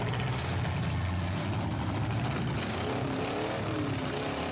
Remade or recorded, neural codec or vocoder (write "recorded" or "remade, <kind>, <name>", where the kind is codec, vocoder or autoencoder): recorded